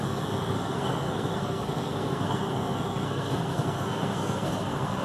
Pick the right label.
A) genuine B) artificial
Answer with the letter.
B